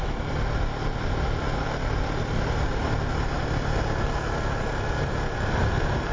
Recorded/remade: recorded